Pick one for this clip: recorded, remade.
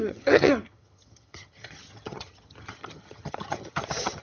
remade